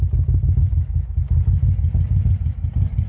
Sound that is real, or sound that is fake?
real